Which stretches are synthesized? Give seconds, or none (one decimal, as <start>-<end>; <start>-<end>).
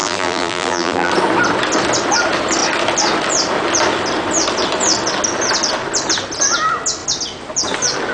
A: 0.0-1.1